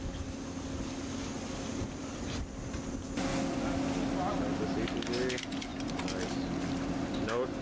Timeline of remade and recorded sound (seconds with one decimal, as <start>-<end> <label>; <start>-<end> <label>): 0.0-7.6 recorded

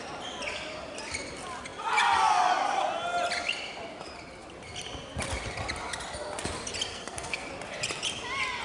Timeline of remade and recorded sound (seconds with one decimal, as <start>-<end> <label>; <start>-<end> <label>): 0.0-6.9 recorded; 6.9-7.5 remade; 7.5-8.6 recorded